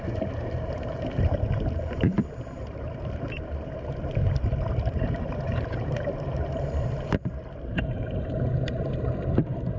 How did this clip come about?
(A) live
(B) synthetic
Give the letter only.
B